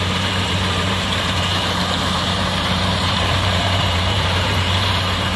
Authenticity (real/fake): fake